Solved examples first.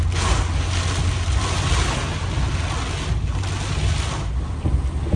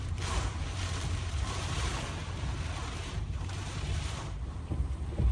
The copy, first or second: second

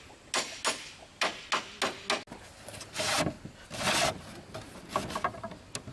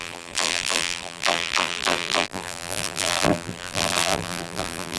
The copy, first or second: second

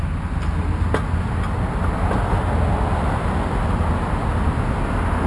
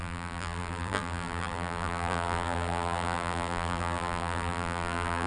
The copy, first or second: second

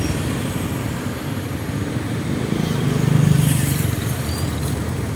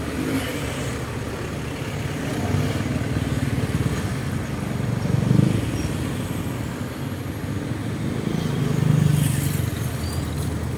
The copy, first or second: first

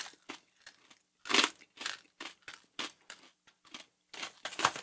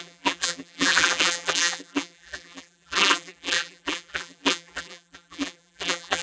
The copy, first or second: second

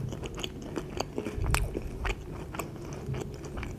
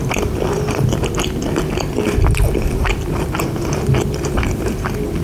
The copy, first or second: second